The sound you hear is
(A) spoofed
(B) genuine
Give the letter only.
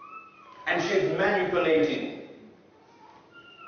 B